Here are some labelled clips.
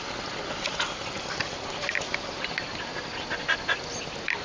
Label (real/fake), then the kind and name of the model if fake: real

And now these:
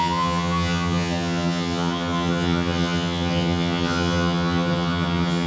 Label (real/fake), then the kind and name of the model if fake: fake, vocoder, HiFi-GAN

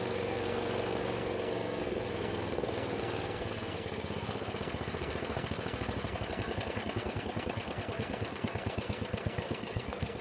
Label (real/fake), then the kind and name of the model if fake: fake, codec, SNAC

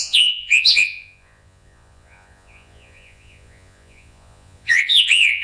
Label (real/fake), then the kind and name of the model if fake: fake, vocoder, Vocos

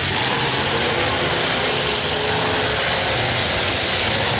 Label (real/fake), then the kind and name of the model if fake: real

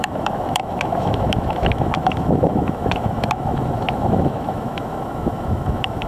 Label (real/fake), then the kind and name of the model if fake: fake, autoencoder, DAC-VAE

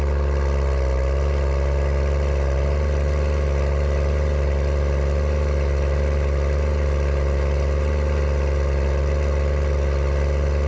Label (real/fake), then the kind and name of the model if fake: real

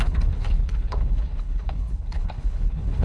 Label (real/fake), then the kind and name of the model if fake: fake, codec, HILCodec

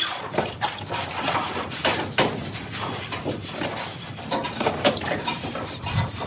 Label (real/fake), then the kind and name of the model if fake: real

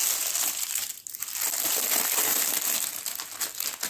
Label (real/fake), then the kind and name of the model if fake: real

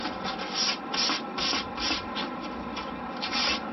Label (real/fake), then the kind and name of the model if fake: real